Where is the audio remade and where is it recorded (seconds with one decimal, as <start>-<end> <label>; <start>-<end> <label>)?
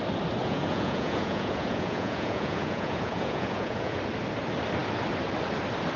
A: 0.0-0.4 recorded; 0.4-4.0 remade; 4.0-6.0 recorded